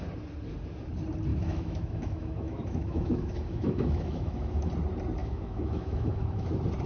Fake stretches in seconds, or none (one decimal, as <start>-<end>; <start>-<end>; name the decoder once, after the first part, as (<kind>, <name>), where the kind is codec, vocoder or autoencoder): 1.3-4.7 (autoencoder, DAC-VAE); 5.2-6.5